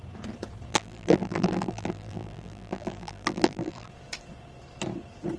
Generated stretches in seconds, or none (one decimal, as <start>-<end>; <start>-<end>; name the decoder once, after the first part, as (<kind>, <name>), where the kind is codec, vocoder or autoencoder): 0.7-3.9 (vocoder, BigVGAN v2)